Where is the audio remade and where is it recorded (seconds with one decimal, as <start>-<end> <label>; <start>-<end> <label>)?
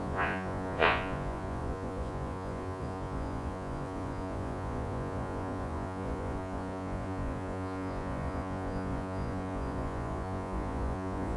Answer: 0.0-11.4 remade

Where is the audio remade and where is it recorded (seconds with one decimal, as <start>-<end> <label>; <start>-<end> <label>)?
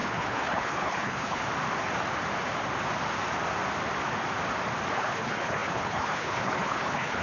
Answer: 0.0-1.4 remade; 1.4-4.9 recorded; 4.9-7.2 remade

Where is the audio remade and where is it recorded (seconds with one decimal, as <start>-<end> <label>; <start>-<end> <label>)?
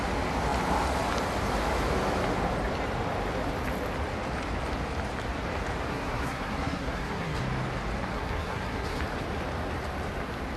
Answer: 0.0-5.9 recorded; 5.9-7.4 remade; 7.4-8.1 recorded; 8.1-9.0 remade; 9.0-10.6 recorded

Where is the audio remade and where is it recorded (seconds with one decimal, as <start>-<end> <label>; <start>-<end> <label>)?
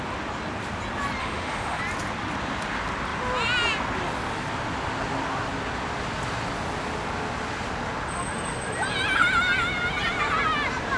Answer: 0.0-1.2 recorded; 1.2-1.8 remade; 1.8-11.0 recorded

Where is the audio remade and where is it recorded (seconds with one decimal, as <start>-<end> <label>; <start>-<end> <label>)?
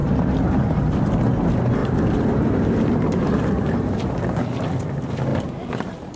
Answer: 0.0-1.0 remade; 1.0-1.8 recorded; 1.8-4.4 remade; 4.4-6.2 recorded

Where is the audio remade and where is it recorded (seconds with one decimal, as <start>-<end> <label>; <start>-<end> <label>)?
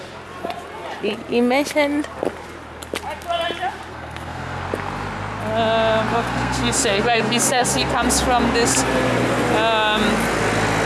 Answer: 0.0-3.9 recorded; 3.9-4.6 remade; 4.6-6.1 recorded; 6.1-7.9 remade; 7.9-10.9 recorded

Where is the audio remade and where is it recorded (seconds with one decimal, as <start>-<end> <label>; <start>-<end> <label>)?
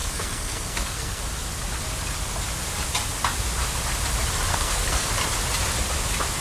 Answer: 0.0-1.2 remade; 1.2-4.5 recorded; 4.5-5.1 remade; 5.1-6.4 recorded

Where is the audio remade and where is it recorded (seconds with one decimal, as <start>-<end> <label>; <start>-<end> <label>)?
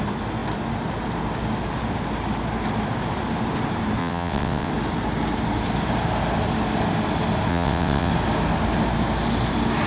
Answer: 0.0-4.0 recorded; 4.0-4.7 remade; 4.7-7.5 recorded; 7.5-8.1 remade; 8.1-9.9 recorded